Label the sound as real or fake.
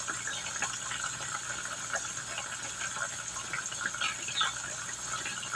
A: real